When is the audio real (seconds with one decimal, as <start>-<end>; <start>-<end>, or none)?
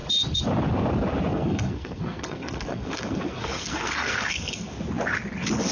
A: 0.0-1.3; 4.7-5.7